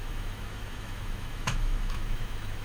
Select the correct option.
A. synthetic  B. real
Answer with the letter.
A